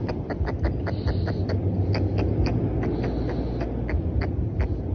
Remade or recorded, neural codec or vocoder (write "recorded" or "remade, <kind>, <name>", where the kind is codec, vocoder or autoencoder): recorded